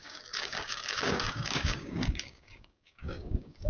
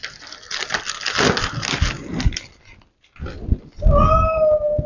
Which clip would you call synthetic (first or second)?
first